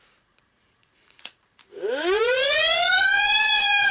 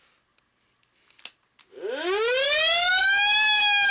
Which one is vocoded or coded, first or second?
first